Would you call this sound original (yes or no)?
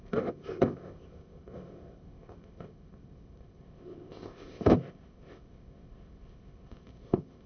no